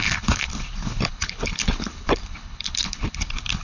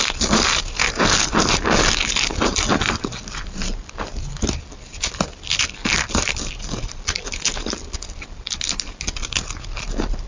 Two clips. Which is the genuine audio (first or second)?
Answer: second